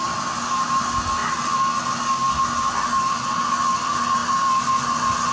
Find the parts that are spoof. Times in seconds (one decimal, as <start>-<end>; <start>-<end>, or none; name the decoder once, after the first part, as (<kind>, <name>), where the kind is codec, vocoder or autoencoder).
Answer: none